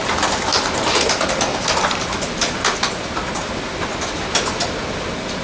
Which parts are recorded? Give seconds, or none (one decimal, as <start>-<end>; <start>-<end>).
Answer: 0.0-5.4